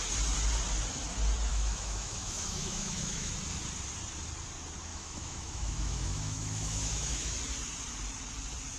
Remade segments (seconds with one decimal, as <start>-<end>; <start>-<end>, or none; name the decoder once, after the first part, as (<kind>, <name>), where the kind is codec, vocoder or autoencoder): 1.5-3.3 (autoencoder, DAC-VAE); 4.9-7.4